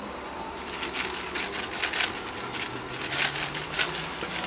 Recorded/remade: recorded